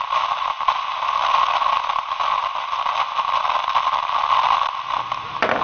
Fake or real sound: fake